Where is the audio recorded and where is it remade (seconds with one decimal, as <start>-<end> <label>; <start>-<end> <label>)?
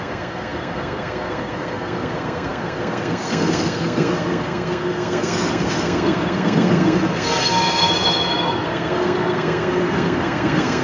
0.0-10.8 remade